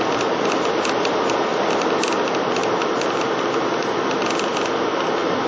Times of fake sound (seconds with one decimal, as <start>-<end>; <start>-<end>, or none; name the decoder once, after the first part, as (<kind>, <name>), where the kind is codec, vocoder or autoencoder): none